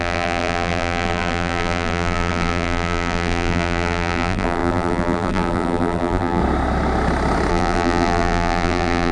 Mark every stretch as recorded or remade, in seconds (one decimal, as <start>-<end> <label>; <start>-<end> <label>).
0.0-6.4 remade; 6.4-7.5 recorded; 7.5-9.1 remade